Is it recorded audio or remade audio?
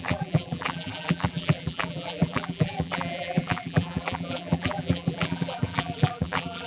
remade